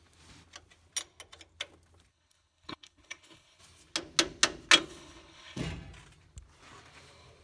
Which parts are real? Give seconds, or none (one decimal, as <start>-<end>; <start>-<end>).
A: 0.0-2.1; 3.6-4.9; 5.6-7.4